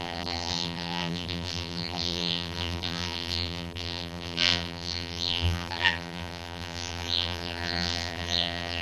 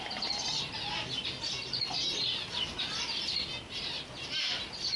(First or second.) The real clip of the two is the second